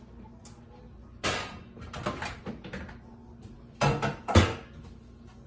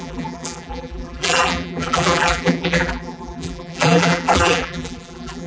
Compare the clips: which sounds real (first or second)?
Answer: first